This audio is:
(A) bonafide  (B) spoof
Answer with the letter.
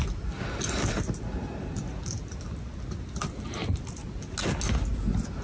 A